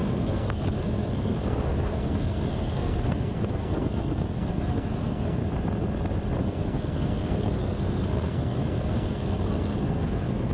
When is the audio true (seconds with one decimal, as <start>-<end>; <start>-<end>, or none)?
5.4-6.4